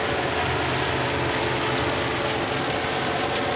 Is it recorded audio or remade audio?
recorded